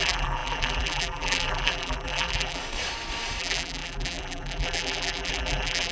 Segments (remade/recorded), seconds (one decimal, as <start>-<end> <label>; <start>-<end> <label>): 0.0-2.6 remade; 2.6-3.4 recorded; 3.4-5.9 remade